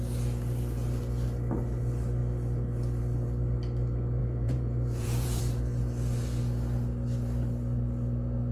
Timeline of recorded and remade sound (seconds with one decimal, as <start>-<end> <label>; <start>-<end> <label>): 0.0-4.2 recorded; 4.2-5.4 remade; 5.4-8.5 recorded